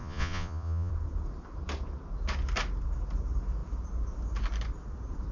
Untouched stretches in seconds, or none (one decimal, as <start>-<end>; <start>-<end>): 0.9-5.3